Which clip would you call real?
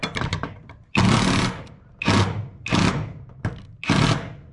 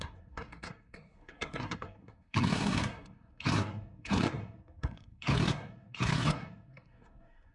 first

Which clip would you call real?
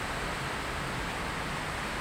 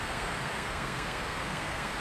first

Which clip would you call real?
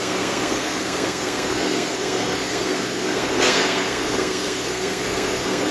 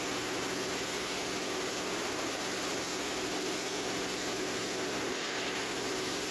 second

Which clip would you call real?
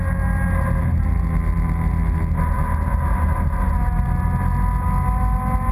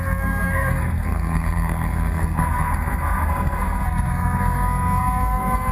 first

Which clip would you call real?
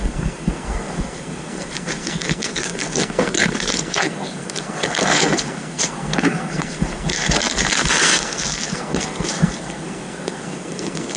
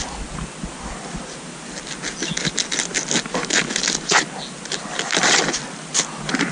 second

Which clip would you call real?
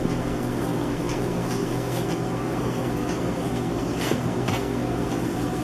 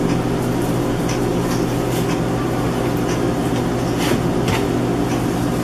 second